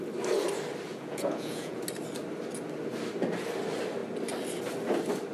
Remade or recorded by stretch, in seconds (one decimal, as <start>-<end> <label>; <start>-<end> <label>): 0.0-0.9 recorded; 0.9-1.8 remade; 1.8-5.3 recorded